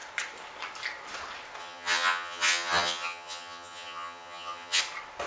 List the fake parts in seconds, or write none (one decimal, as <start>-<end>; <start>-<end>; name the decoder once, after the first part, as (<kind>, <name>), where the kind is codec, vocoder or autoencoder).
1.6-4.8 (vocoder, HiFi-GAN)